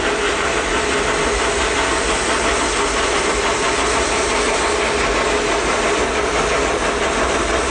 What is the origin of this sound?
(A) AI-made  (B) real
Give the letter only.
B